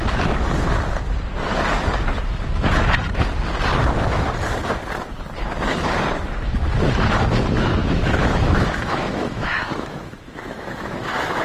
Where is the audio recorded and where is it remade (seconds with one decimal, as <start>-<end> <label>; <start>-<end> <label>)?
0.0-7.8 recorded; 7.8-11.4 remade